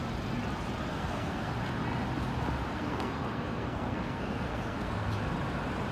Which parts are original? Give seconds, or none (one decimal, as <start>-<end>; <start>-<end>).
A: 0.0-0.9; 1.5-2.7; 5.1-5.9